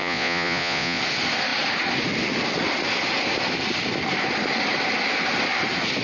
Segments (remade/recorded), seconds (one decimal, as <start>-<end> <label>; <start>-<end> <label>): 0.0-1.0 remade; 1.0-6.0 recorded